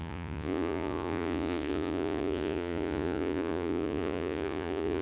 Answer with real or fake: fake